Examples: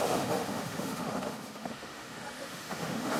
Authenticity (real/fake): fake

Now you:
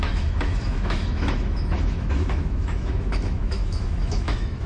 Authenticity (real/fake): fake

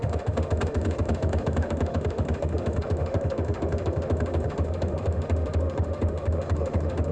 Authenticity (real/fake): fake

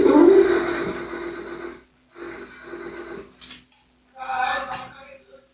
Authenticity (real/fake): real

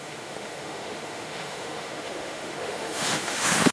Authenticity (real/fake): fake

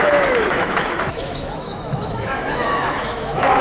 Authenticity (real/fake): fake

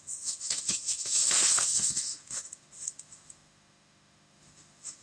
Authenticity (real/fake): fake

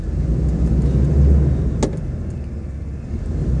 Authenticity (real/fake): real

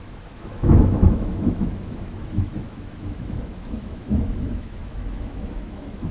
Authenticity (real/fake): fake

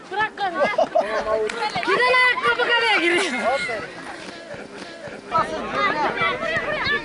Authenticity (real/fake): real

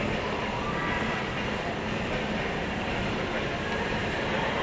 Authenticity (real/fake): real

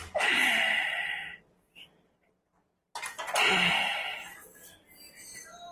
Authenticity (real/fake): real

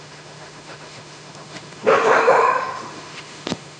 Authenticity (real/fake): fake